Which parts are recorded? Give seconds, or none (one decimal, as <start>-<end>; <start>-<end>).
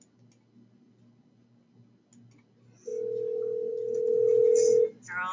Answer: 0.0-5.3